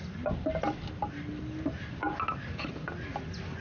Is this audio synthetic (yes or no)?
no